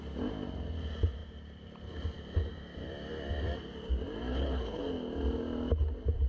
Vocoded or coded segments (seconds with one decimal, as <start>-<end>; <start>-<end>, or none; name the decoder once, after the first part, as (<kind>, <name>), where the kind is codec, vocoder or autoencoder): 4.3-4.8 (codec, HILCodec)